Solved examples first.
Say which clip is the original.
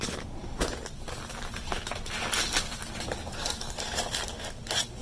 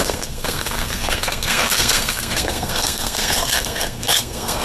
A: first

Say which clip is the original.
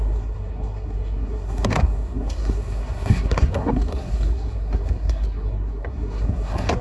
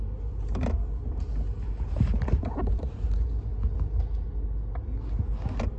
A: second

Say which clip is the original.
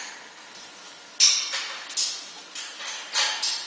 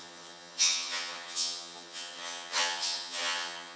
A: first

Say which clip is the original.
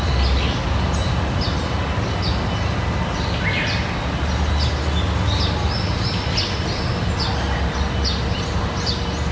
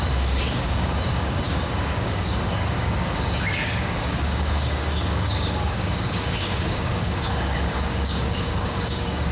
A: first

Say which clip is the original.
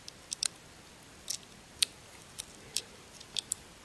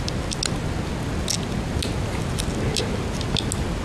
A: second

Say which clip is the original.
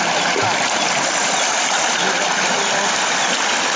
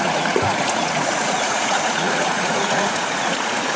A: first